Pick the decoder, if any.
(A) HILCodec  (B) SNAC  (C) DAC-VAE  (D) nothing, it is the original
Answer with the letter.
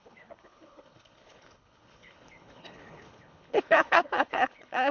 A